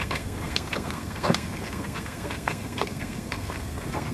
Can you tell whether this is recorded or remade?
remade